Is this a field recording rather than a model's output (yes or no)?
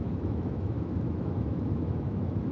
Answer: no